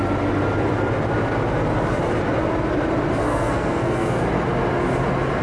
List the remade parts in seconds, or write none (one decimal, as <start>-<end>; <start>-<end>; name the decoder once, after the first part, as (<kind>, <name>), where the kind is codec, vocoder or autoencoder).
3.2-4.2 (codec, SNAC)

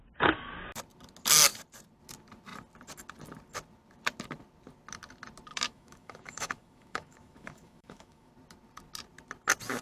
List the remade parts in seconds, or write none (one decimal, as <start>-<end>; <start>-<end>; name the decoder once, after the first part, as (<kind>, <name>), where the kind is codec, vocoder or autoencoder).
5.5-8.3 (autoencoder, DAC-VAE)

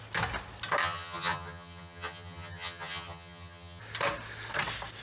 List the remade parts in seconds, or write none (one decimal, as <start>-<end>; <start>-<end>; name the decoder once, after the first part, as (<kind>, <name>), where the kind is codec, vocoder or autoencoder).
0.8-3.8 (vocoder, HiFi-GAN)

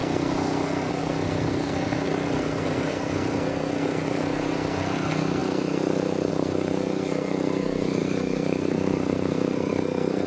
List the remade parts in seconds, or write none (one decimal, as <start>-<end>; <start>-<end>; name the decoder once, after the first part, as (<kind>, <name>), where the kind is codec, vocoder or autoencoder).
0.0-10.3 (codec, SNAC)

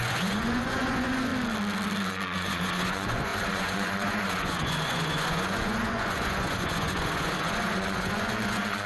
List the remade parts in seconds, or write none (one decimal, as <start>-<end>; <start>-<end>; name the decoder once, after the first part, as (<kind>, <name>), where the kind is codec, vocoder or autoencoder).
0.0-1.3 (vocoder, Vocos); 2.1-8.9